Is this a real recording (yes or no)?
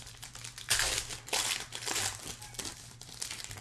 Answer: yes